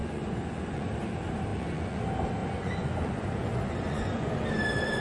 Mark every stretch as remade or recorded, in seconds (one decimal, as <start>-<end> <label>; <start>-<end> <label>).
0.0-0.9 remade; 0.9-1.5 recorded; 1.5-2.0 remade; 2.0-2.4 recorded; 2.4-4.4 remade; 4.4-5.0 recorded